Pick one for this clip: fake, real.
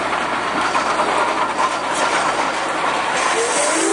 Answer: real